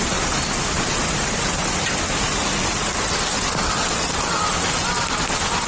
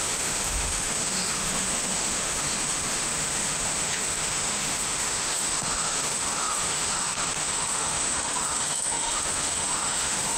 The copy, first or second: second